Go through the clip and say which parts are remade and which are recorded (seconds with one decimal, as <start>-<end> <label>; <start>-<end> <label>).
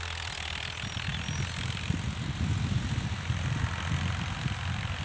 0.0-5.0 recorded